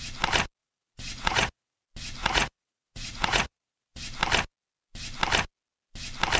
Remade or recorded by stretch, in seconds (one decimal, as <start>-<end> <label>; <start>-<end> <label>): 0.0-0.6 recorded; 0.6-1.8 remade; 1.8-2.2 recorded; 2.2-4.0 remade; 4.0-6.4 recorded